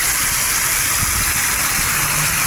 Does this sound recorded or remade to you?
recorded